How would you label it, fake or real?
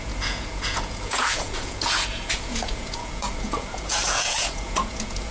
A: fake